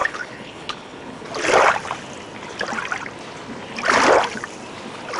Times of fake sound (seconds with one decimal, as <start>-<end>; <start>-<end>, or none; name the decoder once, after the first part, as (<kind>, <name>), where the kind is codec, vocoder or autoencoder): 0.0-1.3 (codec, HILCodec)